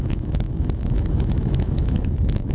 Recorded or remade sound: remade